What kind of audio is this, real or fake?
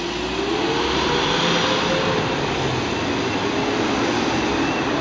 real